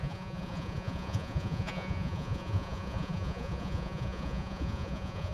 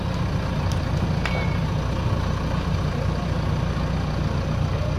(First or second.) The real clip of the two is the second